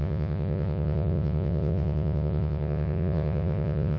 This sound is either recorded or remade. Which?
remade